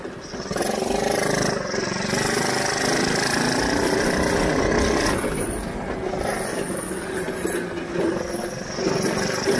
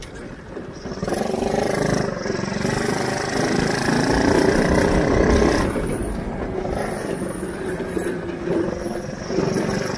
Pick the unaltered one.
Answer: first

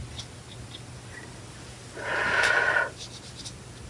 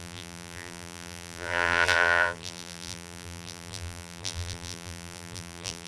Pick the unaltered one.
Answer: first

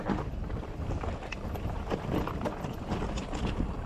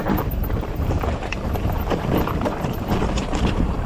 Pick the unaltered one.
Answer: first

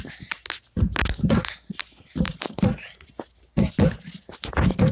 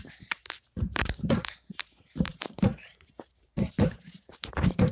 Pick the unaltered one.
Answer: first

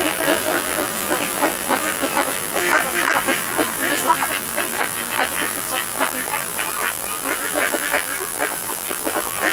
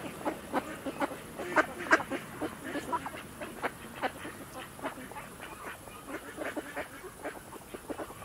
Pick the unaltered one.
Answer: second